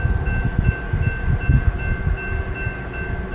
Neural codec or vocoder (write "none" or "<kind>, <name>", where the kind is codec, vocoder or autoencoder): none